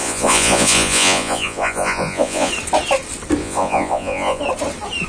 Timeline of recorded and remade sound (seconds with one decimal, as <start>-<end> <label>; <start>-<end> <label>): 0.0-2.5 remade; 2.5-3.4 recorded; 3.4-4.4 remade; 4.4-5.1 recorded